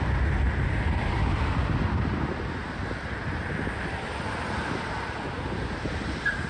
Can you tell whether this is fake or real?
real